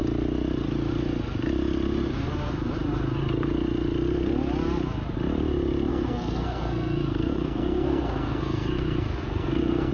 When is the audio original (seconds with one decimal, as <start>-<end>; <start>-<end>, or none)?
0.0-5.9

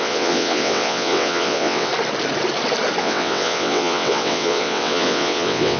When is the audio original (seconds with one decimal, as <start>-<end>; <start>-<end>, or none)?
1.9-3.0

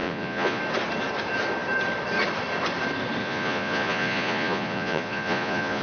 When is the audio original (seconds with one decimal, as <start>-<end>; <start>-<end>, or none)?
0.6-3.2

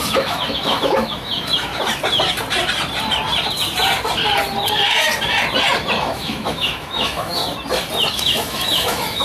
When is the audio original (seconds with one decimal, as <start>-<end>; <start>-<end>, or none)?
1.7-6.0; 7.4-8.1

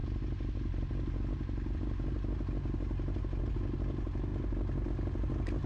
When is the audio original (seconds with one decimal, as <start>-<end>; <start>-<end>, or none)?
0.0-5.7

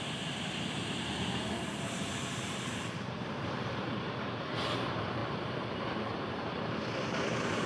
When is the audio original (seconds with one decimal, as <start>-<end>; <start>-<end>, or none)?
none

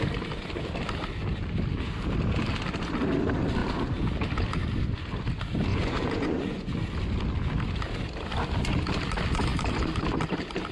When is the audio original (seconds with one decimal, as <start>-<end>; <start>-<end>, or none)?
0.0-5.7; 6.7-10.7